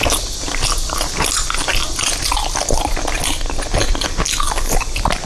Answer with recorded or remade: recorded